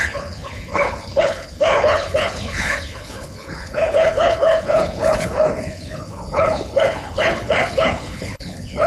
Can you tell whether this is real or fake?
fake